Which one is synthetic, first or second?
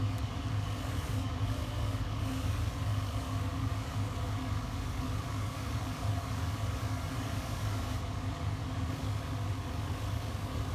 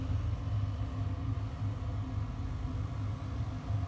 first